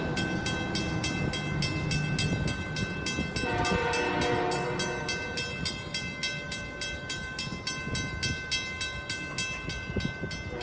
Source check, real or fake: real